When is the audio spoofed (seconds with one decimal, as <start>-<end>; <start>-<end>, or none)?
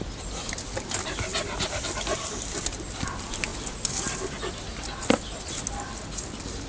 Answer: none